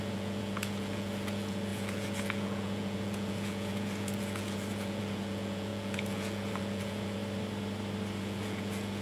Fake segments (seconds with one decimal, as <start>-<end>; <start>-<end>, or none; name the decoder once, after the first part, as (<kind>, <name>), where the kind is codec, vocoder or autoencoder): 0.0-7.2 (vocoder, Vocos); 8.2-9.0